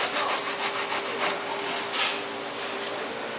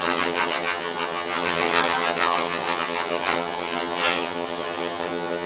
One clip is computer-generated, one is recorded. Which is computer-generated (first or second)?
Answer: second